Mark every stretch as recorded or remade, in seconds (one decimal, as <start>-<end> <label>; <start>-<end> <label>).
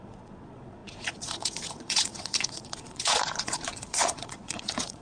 0.0-5.0 remade